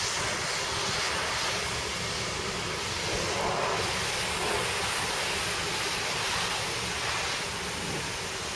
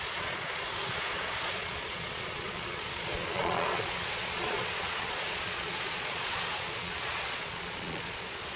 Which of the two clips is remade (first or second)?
second